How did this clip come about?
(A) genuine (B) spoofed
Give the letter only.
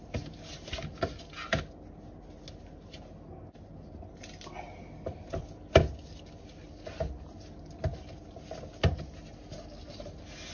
A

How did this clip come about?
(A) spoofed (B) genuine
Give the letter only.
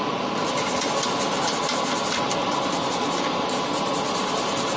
B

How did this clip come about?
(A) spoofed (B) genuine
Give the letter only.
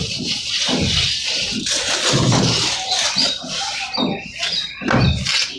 B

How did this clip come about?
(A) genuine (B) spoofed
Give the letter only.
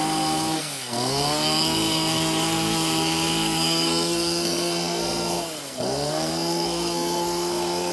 B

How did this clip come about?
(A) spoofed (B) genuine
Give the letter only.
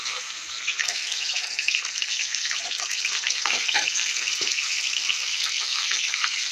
A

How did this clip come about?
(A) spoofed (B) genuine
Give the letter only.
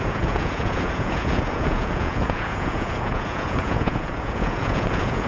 A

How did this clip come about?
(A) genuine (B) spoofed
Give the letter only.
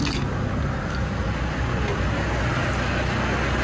A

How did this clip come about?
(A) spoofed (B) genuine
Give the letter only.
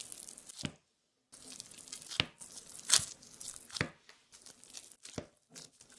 B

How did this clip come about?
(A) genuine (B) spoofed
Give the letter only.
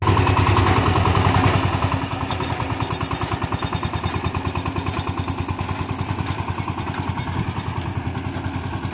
A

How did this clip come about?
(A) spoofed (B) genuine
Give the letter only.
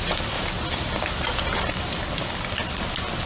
B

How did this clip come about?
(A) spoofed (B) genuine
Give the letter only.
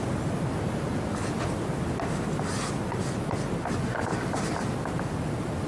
B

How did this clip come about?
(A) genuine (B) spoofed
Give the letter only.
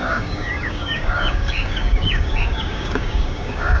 B